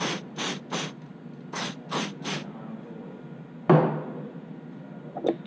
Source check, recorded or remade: recorded